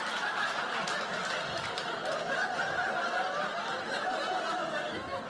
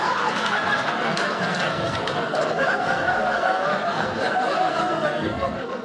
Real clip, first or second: first